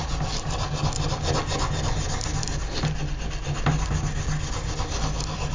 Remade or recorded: recorded